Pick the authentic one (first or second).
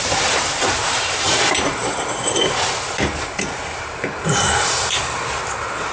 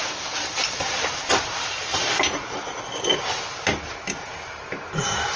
second